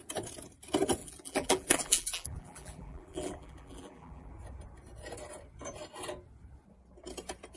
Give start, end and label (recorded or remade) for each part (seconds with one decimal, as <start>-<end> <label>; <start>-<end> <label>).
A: 0.0-1.0 recorded; 1.0-4.3 remade; 4.3-7.6 recorded